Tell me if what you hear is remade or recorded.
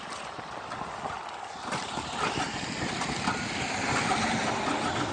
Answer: recorded